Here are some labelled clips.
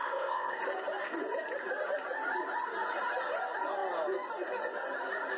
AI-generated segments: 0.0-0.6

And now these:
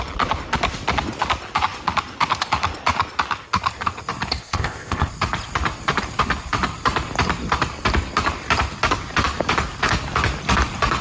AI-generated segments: 4.4-5.1